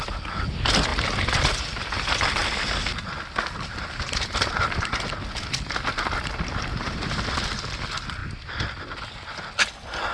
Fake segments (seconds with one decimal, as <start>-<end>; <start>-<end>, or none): 0.9-1.5; 6.7-7.2